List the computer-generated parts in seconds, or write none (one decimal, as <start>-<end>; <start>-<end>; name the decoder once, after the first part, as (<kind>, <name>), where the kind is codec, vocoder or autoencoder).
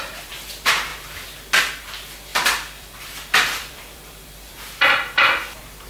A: 2.3-4.5 (vocoder, BigVGAN v2)